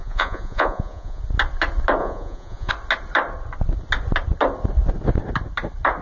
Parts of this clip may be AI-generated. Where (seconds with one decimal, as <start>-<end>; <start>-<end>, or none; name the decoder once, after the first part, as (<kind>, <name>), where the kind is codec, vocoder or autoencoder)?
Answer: 0.0-1.2 (vocoder, Vocos); 2.0-2.7